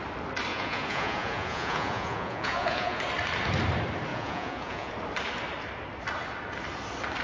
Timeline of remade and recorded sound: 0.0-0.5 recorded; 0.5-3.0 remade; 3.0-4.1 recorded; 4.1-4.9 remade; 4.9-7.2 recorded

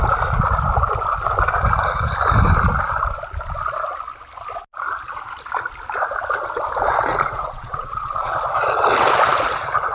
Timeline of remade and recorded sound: 0.0-7.1 recorded; 7.1-8.3 remade; 8.3-9.9 recorded

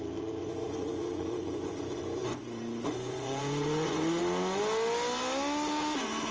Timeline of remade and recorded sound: 0.0-0.4 recorded; 0.4-4.2 remade; 4.2-6.3 recorded

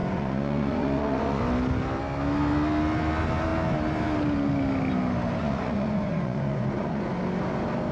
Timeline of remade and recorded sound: 0.0-1.4 remade; 1.4-5.4 recorded; 5.4-7.1 remade; 7.1-7.9 recorded

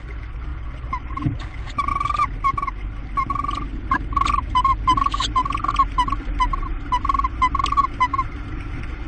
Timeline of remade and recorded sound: 0.0-9.1 recorded

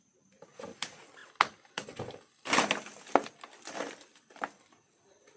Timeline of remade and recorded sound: 0.0-5.4 recorded

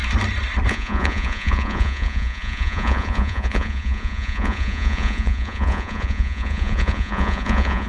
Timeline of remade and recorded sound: 0.0-0.7 recorded; 0.7-7.9 remade

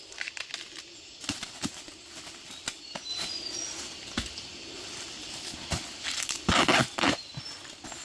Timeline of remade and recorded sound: 0.0-8.0 recorded